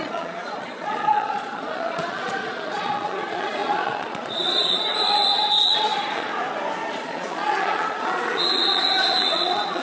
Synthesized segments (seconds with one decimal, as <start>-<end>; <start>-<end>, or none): 0.0-6.3; 6.9-9.8